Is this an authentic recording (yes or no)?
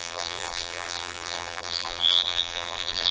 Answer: no